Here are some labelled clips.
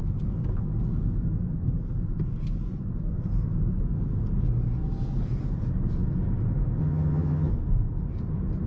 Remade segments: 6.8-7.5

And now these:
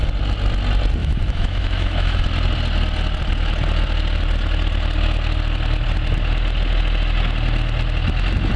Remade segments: 1.0-2.2

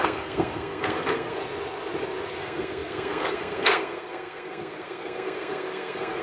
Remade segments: 0.0-1.4; 2.4-6.2

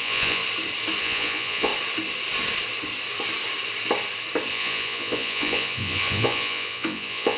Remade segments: 0.0-0.4; 1.0-1.7; 4.5-7.4